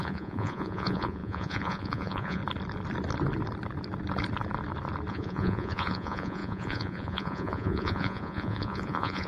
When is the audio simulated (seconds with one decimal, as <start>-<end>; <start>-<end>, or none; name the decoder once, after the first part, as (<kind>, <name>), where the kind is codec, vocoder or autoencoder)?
0.0-2.4 (vocoder, Vocos); 5.1-9.3